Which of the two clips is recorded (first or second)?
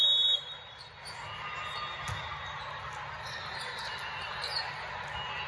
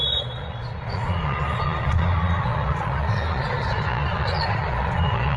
first